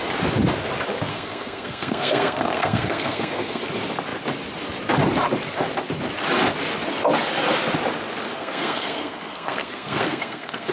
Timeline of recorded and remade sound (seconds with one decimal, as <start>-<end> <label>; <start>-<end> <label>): 0.0-1.1 recorded; 1.1-3.6 remade; 3.6-8.3 recorded; 8.3-10.7 remade